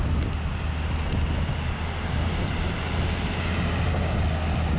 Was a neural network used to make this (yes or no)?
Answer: no